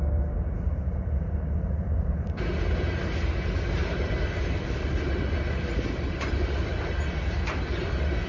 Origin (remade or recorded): recorded